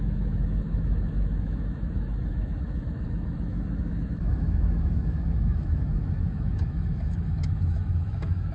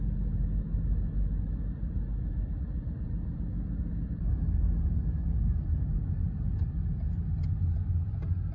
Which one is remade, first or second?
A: first